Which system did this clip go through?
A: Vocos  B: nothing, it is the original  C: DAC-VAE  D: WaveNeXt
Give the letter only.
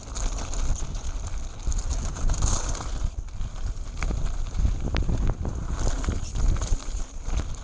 B